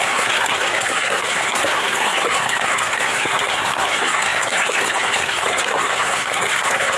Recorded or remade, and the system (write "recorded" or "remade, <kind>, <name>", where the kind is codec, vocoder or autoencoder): remade, codec, SNAC